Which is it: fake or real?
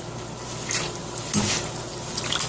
real